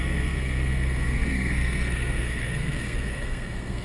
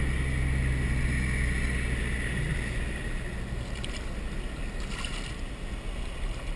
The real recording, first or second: second